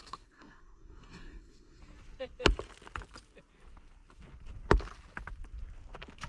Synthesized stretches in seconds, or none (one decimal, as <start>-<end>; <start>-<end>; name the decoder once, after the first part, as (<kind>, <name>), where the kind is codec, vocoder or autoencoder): 0.0-1.8 (codec, SNAC)